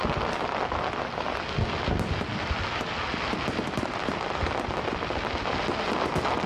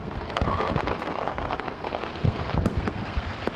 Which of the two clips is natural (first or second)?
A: first